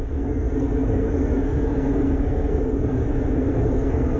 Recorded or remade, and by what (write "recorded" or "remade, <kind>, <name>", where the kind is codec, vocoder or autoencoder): remade, codec, SNAC